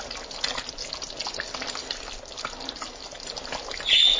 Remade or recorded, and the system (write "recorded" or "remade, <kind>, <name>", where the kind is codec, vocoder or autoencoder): recorded